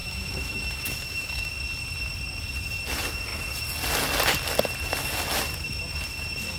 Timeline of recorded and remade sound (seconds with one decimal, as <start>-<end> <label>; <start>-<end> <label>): 0.0-1.5 remade; 1.5-6.6 recorded